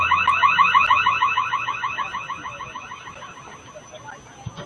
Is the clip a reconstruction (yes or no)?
no